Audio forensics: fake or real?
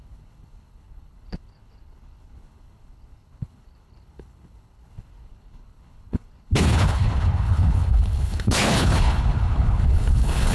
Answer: fake